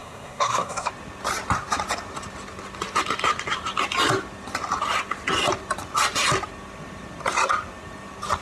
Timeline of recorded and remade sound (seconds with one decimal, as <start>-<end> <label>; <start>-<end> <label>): 0.0-0.9 remade; 0.9-8.4 recorded